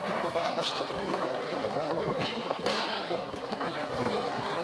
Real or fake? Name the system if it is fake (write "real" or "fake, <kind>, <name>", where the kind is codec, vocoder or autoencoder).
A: fake, codec, SNAC